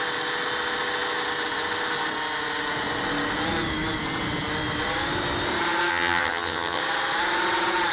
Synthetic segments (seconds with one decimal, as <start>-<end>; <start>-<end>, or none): 5.9-6.8